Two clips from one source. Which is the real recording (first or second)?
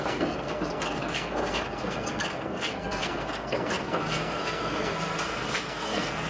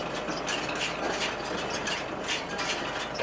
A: second